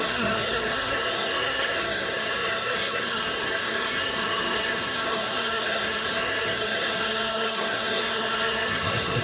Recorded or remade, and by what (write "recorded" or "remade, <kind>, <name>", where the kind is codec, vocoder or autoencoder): remade, codec, SNAC